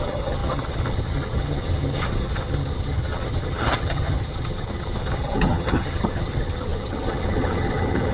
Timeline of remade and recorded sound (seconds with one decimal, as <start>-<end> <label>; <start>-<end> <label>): 0.0-8.1 remade